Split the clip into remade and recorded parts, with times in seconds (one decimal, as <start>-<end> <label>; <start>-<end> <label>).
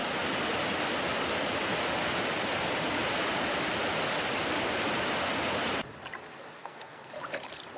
0.0-6.6 recorded; 6.6-7.1 remade; 7.1-7.8 recorded